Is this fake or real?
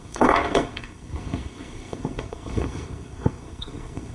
fake